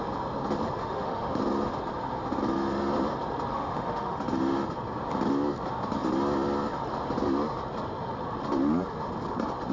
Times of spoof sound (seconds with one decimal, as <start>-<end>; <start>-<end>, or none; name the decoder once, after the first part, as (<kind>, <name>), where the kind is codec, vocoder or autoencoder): 0.8-1.4 (autoencoder, DAC-VAE); 3.5-4.2